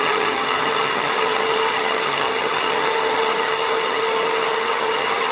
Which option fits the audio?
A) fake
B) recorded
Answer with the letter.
A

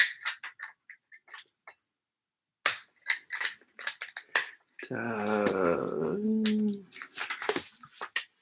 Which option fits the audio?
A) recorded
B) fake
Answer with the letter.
A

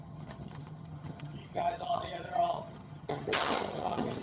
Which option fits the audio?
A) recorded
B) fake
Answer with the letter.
B